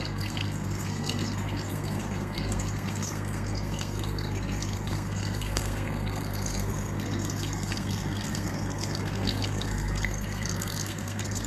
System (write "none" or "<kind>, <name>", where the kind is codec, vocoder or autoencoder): codec, SNAC